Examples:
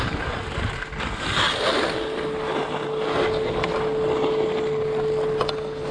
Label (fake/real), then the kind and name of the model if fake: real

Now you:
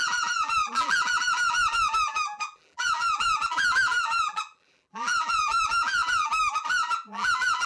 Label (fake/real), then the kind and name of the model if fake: fake, vocoder, BigVGAN v2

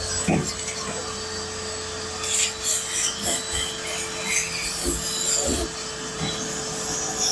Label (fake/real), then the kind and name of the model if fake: real